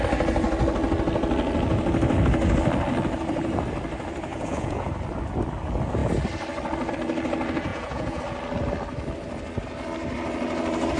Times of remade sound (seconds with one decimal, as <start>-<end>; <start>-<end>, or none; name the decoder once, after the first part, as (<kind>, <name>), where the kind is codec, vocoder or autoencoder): 4.3-4.9 (vocoder, Vocos); 7.7-8.2